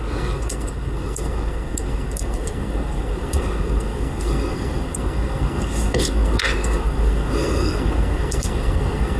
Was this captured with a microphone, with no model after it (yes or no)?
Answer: no